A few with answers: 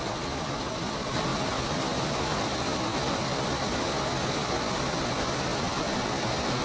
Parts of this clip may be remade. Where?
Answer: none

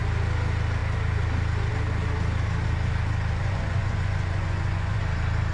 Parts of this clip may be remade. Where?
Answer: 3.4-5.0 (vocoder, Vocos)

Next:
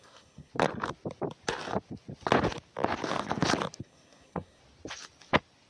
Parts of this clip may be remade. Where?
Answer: 0.0-0.5 (codec, SNAC); 3.8-4.6

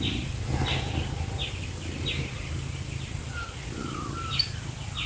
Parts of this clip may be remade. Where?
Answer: none

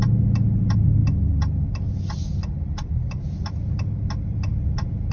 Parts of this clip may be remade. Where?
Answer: none

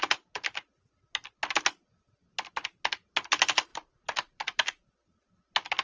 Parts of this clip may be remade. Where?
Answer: 3.7-4.9 (vocoder, BigVGAN v2)

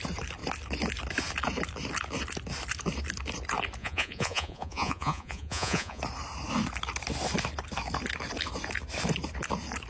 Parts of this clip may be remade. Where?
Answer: 3.8-6.0 (vocoder, Vocos)